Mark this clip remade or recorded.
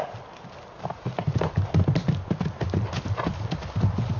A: recorded